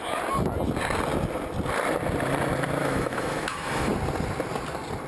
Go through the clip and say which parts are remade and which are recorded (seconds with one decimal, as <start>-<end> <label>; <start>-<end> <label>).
0.0-2.8 recorded; 2.8-3.9 remade; 3.9-5.1 recorded